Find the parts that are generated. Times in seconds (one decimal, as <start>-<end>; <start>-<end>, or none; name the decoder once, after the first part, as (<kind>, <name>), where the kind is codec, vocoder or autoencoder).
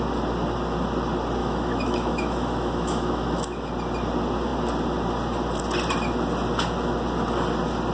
1.4-3.7 (autoencoder, DAC-VAE)